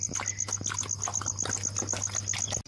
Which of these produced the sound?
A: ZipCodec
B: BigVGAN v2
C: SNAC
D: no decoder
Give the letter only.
D